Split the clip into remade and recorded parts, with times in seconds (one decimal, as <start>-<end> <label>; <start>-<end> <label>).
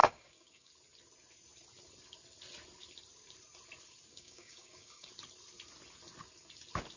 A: 0.0-0.7 remade; 0.7-4.1 recorded; 4.1-5.1 remade; 5.1-7.0 recorded